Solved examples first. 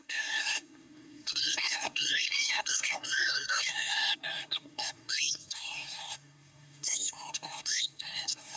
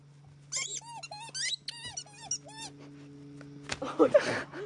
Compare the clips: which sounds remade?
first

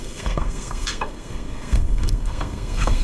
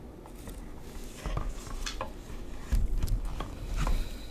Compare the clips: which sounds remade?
first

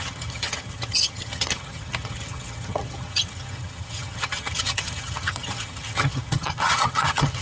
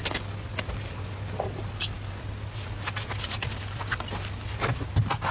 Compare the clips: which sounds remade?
first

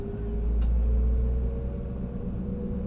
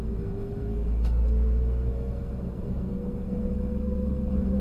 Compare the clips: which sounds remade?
second